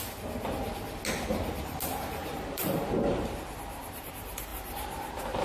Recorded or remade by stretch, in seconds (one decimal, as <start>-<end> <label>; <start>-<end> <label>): 0.0-2.2 recorded; 2.2-4.1 remade; 4.1-4.5 recorded; 4.5-5.4 remade